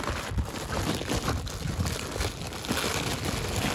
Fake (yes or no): no